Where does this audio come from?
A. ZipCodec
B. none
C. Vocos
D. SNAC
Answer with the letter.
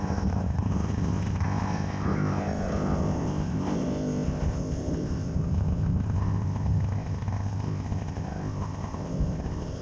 A